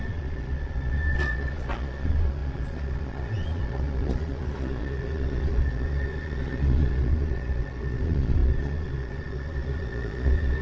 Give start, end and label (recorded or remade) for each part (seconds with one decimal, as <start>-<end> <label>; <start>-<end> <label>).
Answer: 0.0-10.6 remade